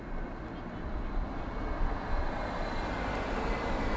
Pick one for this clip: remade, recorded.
recorded